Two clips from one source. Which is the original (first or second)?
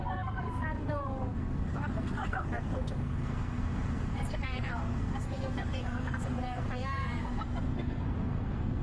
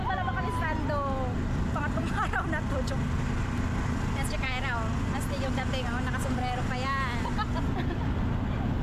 second